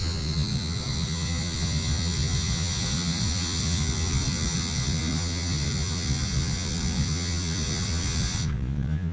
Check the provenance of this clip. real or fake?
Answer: fake